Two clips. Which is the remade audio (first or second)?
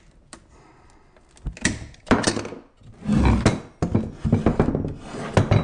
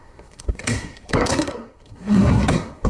second